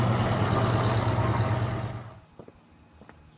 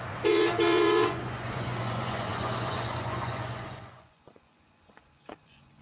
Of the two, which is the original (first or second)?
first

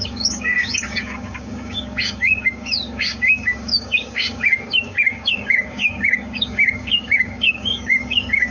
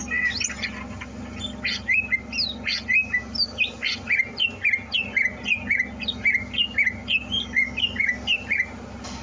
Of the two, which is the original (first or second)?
second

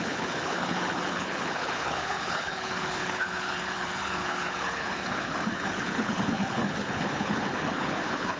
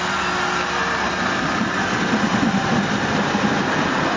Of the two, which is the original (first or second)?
second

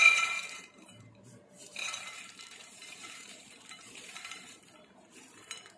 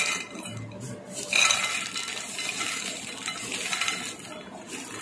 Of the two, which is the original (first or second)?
second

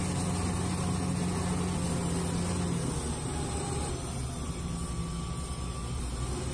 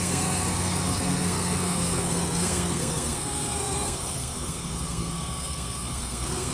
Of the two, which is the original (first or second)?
first